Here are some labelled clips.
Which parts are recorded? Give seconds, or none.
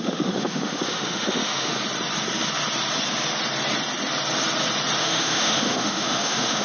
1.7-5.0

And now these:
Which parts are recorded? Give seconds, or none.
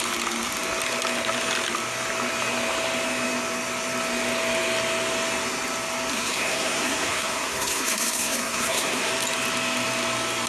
0.0-6.1; 9.1-10.5